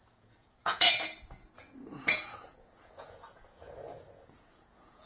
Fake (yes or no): yes